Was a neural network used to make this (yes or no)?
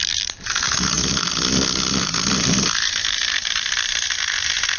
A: no